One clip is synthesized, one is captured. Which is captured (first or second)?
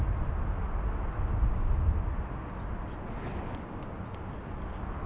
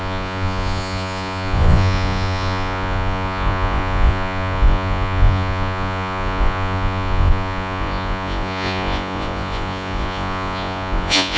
first